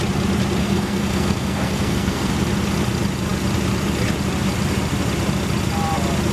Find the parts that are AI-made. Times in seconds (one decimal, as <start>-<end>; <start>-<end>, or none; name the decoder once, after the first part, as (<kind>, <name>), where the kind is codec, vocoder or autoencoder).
0.6-2.3 (codec, SNAC)